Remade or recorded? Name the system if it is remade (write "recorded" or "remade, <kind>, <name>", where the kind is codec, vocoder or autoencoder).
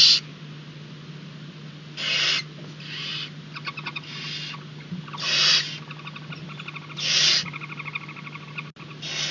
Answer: recorded